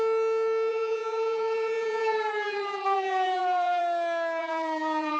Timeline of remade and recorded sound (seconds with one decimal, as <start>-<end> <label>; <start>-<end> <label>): 0.0-0.7 recorded; 0.7-3.8 remade; 3.8-4.4 recorded; 4.4-5.2 remade